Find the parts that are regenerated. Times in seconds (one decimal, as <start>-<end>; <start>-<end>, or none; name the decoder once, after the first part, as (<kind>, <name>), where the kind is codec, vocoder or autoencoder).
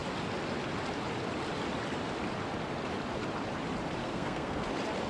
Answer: 4.0-4.6 (codec, SNAC)